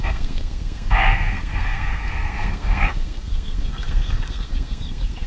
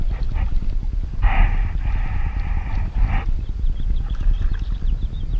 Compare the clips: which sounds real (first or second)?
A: second